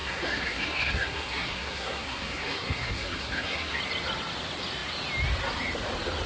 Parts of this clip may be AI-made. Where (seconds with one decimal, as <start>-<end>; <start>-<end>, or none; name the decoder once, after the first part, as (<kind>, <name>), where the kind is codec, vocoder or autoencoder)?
0.0-3.8 (codec, SNAC)